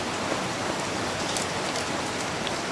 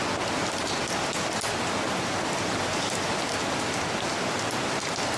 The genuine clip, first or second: second